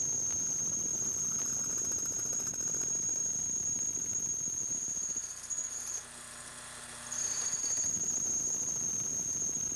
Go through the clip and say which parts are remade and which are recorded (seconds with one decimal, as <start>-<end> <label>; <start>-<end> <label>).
0.0-9.8 recorded